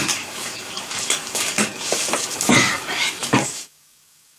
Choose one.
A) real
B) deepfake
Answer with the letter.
B